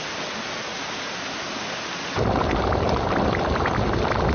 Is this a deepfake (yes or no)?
no